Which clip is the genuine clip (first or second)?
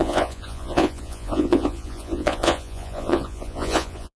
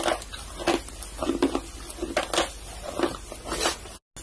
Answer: second